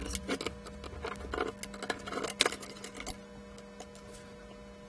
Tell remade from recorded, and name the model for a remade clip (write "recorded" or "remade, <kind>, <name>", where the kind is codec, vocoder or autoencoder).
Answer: recorded